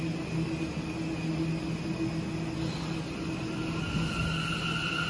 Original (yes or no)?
yes